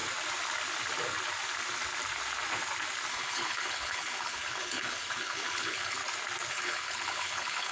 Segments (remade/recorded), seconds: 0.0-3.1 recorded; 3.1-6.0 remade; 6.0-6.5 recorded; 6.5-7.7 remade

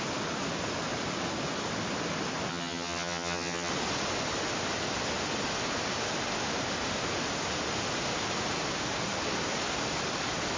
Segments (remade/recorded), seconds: 0.0-2.5 recorded; 2.5-3.7 remade; 3.7-10.6 recorded

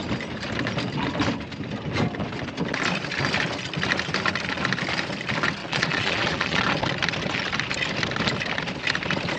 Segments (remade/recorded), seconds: 0.0-5.6 recorded; 5.6-6.6 remade; 6.6-9.4 recorded